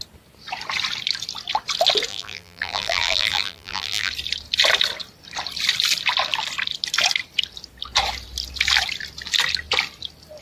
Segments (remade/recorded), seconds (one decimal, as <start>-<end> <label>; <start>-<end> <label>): 0.0-2.1 recorded; 2.1-4.1 remade; 4.1-10.4 recorded